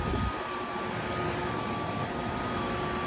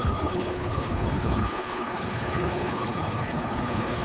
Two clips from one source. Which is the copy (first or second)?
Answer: second